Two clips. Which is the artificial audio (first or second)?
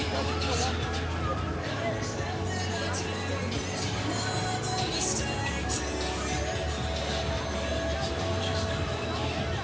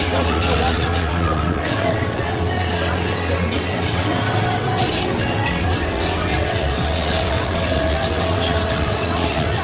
second